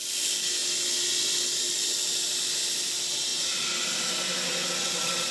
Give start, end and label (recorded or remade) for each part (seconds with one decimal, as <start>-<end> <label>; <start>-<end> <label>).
0.0-5.3 recorded

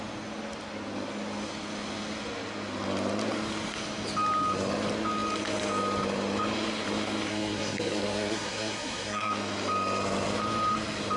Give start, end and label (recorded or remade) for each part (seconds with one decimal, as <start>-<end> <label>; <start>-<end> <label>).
0.0-7.3 recorded; 7.3-9.3 remade; 9.3-11.2 recorded

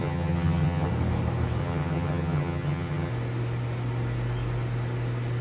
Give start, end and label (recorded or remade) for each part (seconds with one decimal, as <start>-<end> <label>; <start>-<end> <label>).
0.0-0.9 remade; 0.9-1.6 recorded; 1.6-3.1 remade; 3.1-5.4 recorded